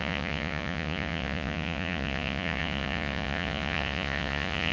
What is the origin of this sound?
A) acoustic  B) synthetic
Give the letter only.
B